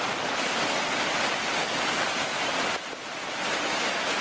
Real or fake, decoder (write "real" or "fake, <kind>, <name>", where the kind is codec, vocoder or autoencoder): real